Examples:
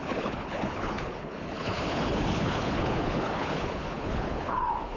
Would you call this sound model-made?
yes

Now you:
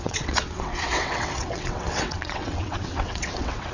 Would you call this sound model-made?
yes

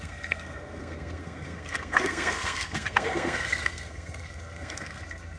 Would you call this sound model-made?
yes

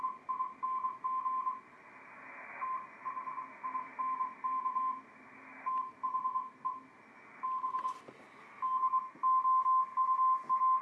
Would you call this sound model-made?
no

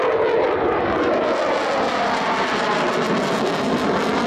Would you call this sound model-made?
no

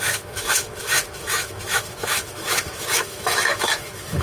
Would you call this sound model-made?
yes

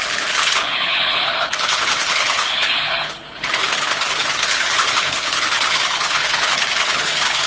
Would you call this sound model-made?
yes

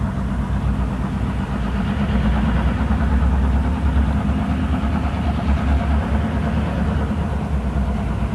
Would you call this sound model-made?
no